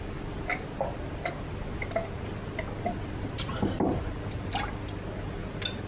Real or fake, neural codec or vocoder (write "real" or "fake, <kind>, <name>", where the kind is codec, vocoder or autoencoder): real